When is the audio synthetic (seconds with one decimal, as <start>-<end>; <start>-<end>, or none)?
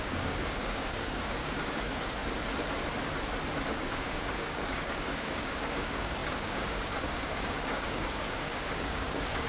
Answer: 0.0-2.2; 3.7-9.5